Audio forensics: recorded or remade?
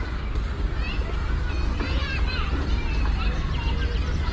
recorded